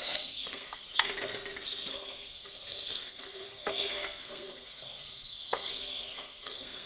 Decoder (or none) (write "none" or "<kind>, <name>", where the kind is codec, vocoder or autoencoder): codec, SNAC